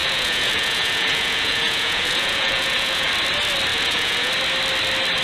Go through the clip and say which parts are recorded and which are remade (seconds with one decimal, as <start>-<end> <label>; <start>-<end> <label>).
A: 0.0-3.1 remade; 3.1-3.7 recorded; 3.7-4.3 remade; 4.3-5.2 recorded